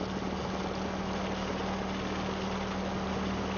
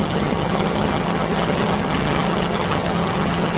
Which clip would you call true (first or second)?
first